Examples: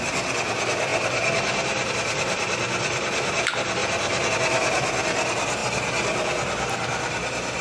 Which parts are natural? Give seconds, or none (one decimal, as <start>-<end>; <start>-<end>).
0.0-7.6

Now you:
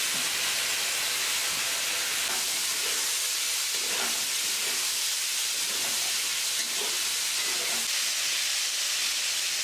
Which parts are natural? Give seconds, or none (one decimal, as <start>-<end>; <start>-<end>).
0.0-9.6

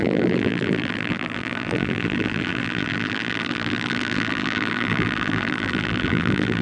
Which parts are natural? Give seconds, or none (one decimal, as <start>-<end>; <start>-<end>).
none

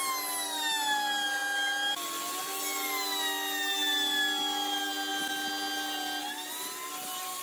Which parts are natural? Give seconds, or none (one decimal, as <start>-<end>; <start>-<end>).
0.0-7.4